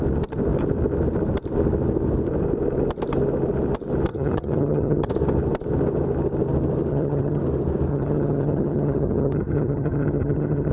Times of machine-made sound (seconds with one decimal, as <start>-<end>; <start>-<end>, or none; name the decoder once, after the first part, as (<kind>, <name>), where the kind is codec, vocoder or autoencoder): 4.1-5.1 (vocoder, HiFi-GAN); 6.9-7.4; 7.9-10.7